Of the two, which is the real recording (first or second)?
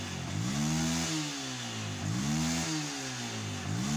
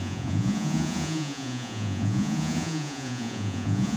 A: first